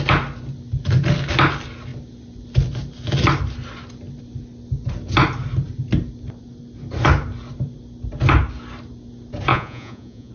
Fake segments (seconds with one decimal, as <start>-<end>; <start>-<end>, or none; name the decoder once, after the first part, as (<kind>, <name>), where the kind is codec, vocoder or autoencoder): 9.5-10.3 (vocoder, Vocos)